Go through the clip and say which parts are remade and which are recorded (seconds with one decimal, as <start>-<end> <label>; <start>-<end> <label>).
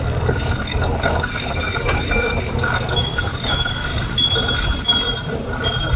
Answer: 0.0-3.9 remade; 3.9-6.0 recorded